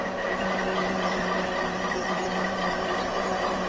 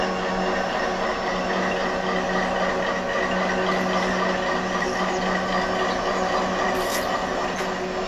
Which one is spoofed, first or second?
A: first